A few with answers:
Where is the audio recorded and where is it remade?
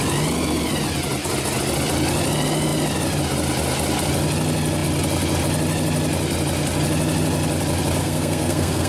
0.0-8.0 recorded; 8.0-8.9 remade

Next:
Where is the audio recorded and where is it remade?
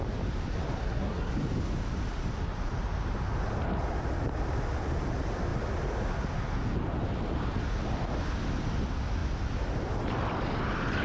0.0-0.8 recorded; 0.8-1.3 remade; 1.3-11.0 recorded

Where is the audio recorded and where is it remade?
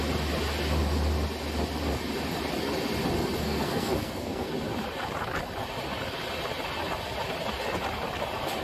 0.0-3.4 recorded; 3.4-4.5 remade; 4.5-8.6 recorded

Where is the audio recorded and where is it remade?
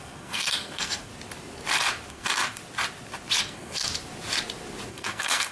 0.0-1.1 remade; 1.1-2.1 recorded; 2.1-2.6 remade; 2.6-3.4 recorded; 3.4-3.9 remade; 3.9-4.9 recorded; 4.9-5.5 remade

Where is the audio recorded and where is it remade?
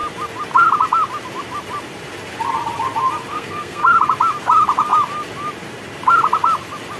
0.0-3.3 recorded; 3.3-3.8 remade; 3.8-7.0 recorded